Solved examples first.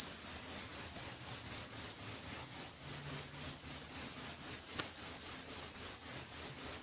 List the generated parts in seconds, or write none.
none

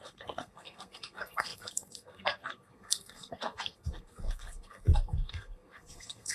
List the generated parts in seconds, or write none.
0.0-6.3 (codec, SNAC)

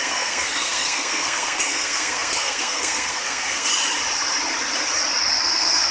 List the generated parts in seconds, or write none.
0.0-3.7 (codec, SNAC); 5.4-5.9

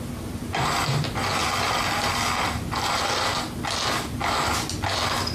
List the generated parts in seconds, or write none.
none